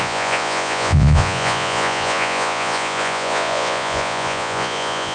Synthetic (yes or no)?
yes